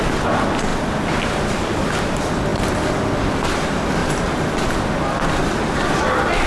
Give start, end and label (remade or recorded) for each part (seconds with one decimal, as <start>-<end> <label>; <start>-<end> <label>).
0.0-0.7 recorded; 0.7-1.5 remade; 1.5-4.0 recorded; 4.0-6.0 remade; 6.0-6.5 recorded